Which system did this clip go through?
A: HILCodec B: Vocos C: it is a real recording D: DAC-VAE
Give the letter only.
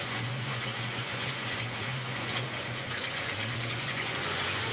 B